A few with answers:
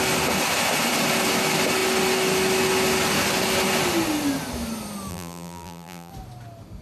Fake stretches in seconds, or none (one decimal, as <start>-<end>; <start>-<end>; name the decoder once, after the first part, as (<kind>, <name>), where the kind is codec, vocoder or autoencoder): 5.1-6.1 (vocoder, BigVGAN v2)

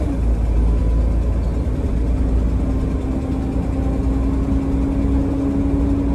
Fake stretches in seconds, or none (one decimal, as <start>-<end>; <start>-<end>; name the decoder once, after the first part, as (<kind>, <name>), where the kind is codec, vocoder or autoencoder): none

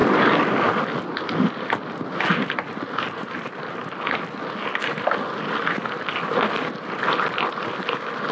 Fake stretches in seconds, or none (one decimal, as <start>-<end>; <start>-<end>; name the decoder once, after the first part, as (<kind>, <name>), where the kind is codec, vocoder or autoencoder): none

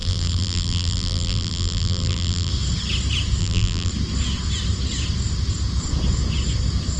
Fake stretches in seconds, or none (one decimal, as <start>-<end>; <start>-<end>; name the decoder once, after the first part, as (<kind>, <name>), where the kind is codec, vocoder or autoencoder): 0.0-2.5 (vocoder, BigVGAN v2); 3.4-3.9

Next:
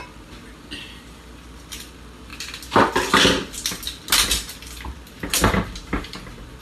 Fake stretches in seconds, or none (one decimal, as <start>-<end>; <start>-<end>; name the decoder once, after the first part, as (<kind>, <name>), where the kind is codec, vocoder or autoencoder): none

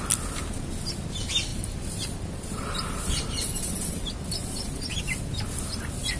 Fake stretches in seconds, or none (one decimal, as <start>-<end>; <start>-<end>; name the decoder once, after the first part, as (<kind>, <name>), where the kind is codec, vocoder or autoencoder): 1.5-5.0 (vocoder, BigVGAN v2)

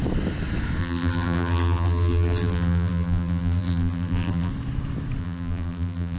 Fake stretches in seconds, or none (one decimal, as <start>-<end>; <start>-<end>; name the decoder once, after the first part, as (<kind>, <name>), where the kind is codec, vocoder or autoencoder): 0.8-4.5 (vocoder, BigVGAN v2); 5.2-6.2